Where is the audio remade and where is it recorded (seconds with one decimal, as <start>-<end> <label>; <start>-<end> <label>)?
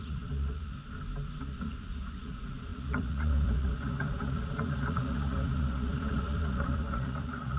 0.0-0.8 remade; 0.8-1.4 recorded; 1.4-7.6 remade